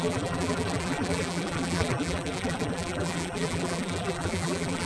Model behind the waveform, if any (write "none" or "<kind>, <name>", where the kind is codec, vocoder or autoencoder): vocoder, BigVGAN v2